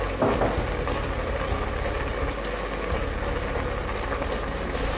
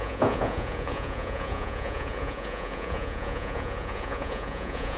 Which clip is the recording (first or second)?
first